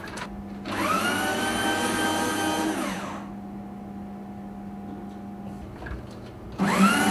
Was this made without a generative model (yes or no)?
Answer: yes